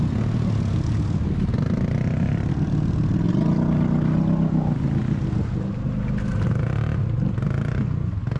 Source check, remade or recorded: recorded